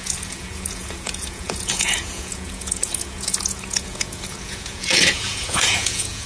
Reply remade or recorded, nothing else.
remade